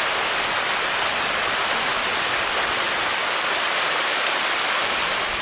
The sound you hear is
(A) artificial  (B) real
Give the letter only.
B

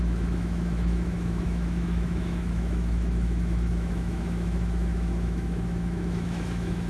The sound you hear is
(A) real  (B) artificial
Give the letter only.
B